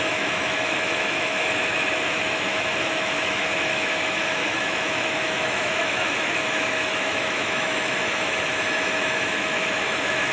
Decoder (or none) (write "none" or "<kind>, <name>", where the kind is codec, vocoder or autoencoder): autoencoder, DAC-VAE